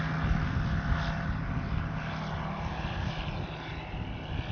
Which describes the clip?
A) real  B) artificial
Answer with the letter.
A